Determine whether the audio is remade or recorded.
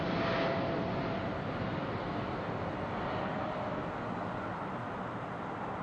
recorded